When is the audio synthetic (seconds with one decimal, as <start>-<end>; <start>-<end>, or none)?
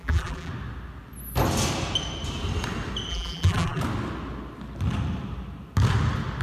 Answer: 0.0-0.5; 3.1-3.8